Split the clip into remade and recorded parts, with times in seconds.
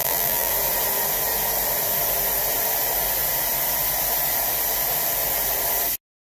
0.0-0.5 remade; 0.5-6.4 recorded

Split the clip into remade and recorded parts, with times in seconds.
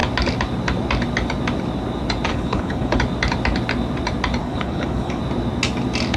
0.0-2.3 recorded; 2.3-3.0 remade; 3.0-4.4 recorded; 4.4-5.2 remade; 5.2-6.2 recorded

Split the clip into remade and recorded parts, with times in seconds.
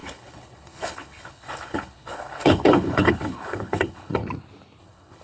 0.0-4.2 remade; 4.2-4.8 recorded; 4.8-5.2 remade